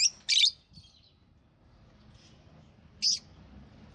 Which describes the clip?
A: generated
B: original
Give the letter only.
B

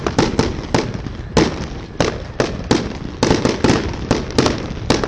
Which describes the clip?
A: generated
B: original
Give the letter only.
B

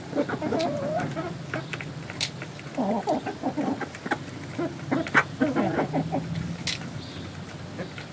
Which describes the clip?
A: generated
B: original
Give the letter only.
B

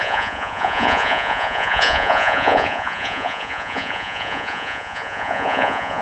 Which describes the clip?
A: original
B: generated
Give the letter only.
B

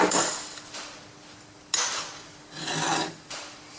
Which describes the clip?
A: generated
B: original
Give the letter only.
B